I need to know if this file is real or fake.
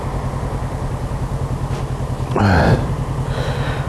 real